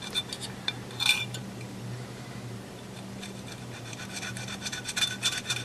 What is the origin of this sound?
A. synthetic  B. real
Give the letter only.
A